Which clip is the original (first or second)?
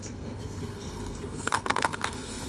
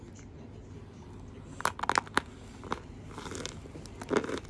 second